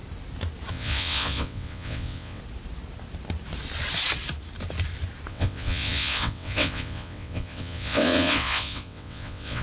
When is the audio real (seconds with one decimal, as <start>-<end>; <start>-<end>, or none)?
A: 0.0-0.7; 2.4-5.3